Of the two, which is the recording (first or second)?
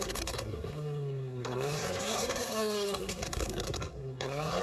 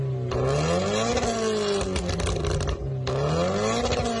second